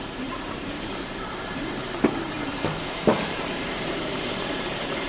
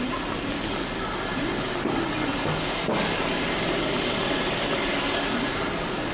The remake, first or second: first